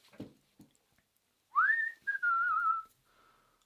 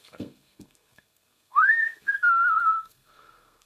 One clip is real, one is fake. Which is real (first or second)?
first